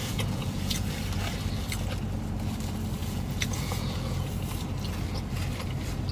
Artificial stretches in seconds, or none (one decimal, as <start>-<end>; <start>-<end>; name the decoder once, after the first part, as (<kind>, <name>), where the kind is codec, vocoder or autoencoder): 0.0-0.9 (vocoder, Vocos); 3.0-4.3